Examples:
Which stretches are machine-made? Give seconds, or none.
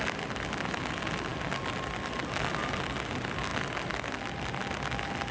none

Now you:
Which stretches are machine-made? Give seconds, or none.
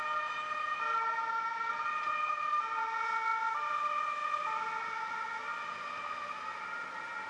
none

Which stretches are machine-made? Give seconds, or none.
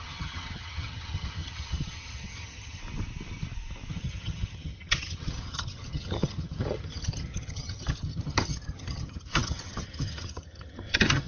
0.0-2.8 (vocoder, HiFi-GAN); 3.9-11.3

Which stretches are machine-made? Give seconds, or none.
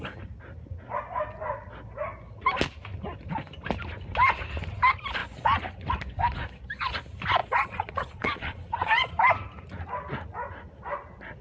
7.4-9.1 (vocoder, Vocos)